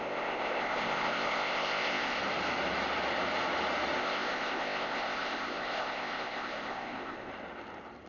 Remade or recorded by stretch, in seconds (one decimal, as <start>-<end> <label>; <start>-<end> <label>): 0.0-2.2 remade; 2.2-4.0 recorded; 4.0-7.3 remade; 7.3-8.1 recorded